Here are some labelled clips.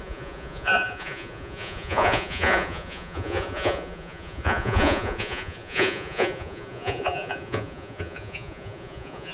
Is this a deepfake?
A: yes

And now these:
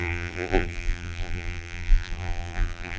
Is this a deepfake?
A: yes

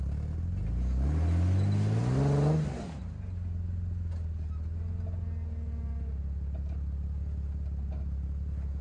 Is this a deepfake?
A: no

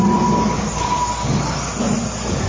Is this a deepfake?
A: no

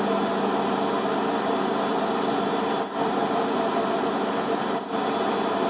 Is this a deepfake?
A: no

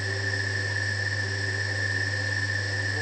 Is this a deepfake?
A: no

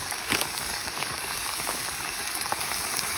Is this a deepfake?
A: yes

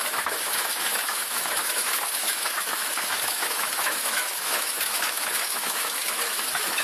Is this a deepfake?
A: yes